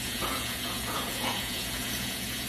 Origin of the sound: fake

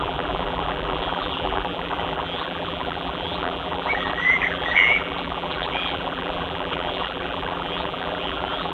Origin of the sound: fake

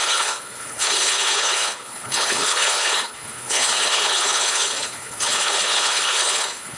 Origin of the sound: fake